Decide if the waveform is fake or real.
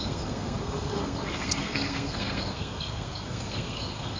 fake